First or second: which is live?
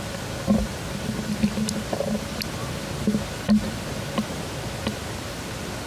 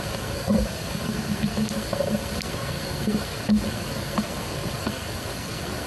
first